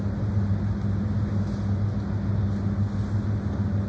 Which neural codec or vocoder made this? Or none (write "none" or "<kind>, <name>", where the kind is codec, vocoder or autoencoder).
none